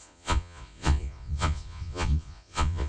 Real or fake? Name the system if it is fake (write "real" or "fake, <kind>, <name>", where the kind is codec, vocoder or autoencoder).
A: fake, vocoder, Vocos